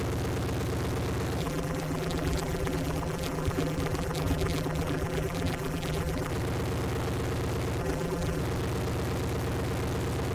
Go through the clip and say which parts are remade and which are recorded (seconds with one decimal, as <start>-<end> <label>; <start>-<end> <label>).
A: 0.0-1.4 recorded; 1.4-6.3 remade; 6.3-7.8 recorded; 7.8-8.4 remade; 8.4-10.3 recorded